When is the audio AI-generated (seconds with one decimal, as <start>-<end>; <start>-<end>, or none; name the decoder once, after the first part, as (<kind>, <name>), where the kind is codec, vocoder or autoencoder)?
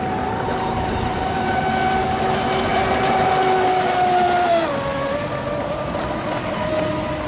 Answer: 0.7-1.6 (vocoder, BigVGAN v2); 2.7-3.3; 4.9-5.4